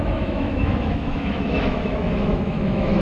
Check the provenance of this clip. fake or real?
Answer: fake